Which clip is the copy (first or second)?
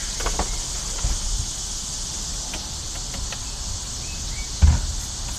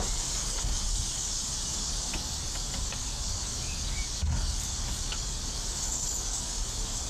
second